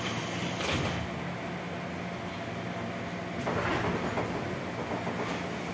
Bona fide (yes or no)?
yes